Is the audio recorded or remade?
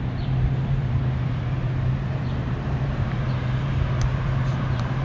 remade